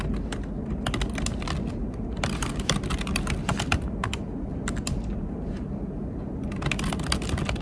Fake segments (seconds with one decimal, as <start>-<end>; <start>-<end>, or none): none